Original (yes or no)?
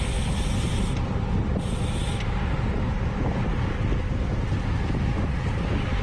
yes